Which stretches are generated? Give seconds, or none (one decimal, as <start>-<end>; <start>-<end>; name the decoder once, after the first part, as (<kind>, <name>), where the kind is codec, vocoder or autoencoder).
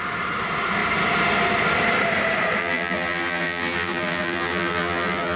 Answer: 2.6-5.4 (vocoder, BigVGAN v2)